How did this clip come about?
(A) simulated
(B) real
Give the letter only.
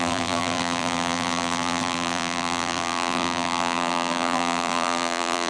A